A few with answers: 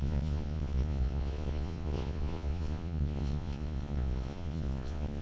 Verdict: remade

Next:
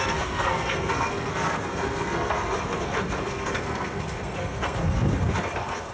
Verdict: remade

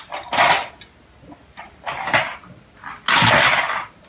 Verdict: recorded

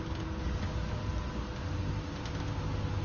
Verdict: recorded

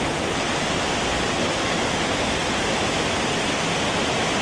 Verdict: recorded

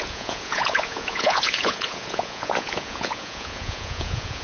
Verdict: remade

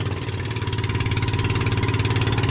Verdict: recorded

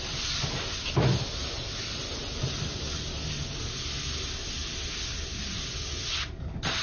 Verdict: recorded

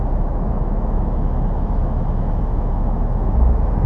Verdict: remade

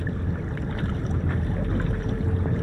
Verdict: remade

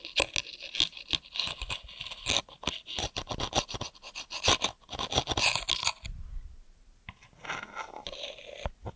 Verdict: recorded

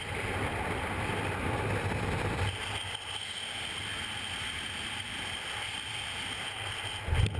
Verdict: recorded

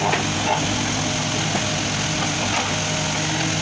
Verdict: recorded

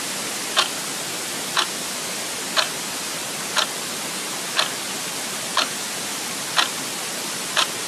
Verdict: recorded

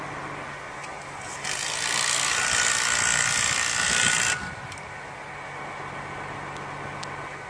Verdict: recorded